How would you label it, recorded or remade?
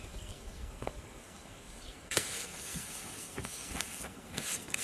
remade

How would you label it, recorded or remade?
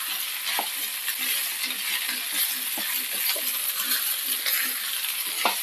recorded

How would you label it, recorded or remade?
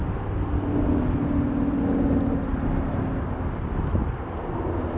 recorded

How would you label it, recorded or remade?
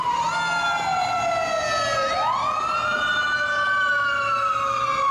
recorded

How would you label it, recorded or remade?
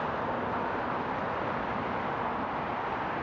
recorded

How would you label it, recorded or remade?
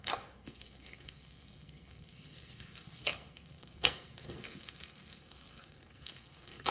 remade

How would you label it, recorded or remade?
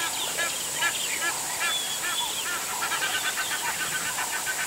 recorded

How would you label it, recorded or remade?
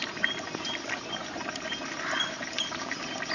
recorded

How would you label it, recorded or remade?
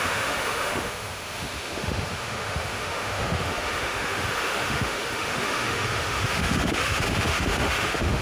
remade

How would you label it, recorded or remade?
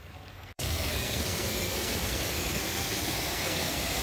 remade